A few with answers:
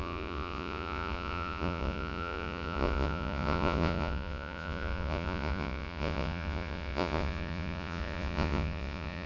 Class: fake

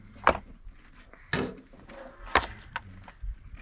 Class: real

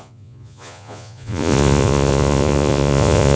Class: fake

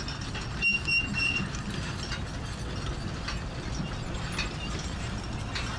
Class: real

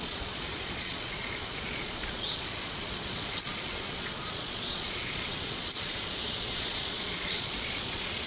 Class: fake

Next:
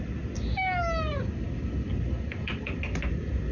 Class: real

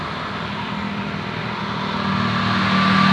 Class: real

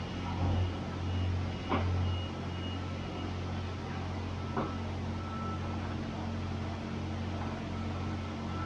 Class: real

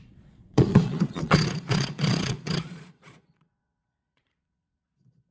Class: fake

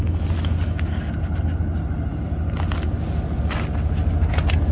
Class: real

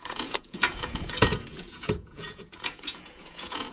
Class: fake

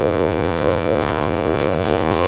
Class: fake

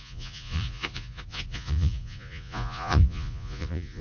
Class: fake